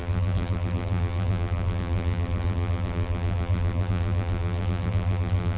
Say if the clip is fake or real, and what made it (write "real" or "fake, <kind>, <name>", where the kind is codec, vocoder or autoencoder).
fake, vocoder, BigVGAN v2